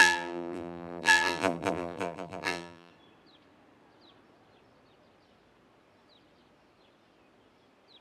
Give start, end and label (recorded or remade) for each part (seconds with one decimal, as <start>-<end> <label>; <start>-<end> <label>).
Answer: 0.0-2.9 remade; 2.9-8.0 recorded